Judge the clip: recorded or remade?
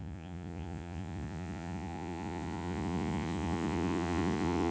remade